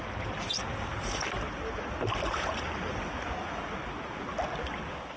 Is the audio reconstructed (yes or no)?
no